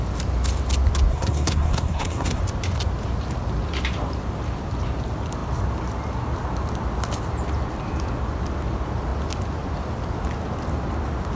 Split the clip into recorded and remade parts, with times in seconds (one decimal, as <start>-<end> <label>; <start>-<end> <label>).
0.0-1.1 recorded; 1.1-2.4 remade; 2.4-11.3 recorded